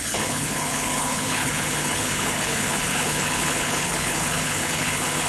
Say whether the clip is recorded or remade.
remade